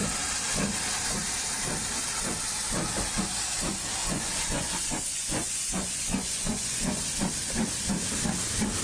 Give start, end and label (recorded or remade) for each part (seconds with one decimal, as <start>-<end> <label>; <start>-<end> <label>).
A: 0.0-4.0 recorded; 4.0-7.0 remade; 7.0-8.8 recorded